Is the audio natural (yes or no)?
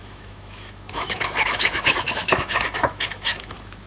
no